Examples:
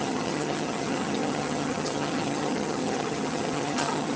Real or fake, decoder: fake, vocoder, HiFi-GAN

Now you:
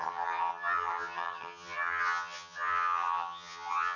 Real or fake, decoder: fake, vocoder, HiFi-GAN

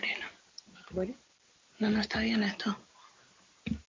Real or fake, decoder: real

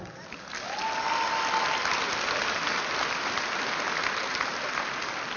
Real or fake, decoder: real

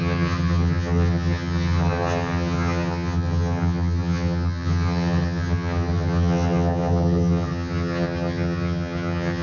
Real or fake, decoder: fake, vocoder, HiFi-GAN